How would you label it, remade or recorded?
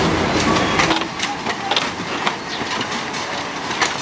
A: recorded